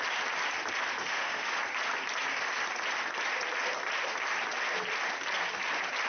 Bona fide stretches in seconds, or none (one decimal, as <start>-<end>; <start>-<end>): 0.0-1.0; 1.6-6.1